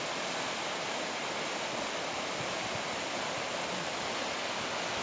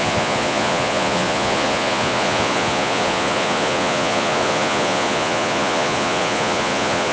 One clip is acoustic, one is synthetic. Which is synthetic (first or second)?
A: second